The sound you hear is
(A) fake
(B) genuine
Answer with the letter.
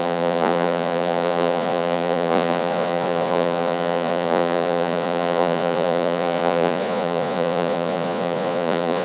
A